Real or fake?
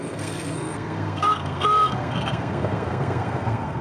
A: fake